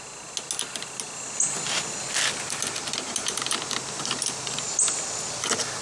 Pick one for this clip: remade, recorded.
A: recorded